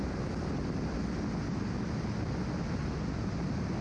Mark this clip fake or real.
real